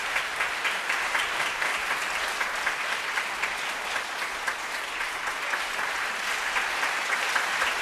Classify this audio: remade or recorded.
recorded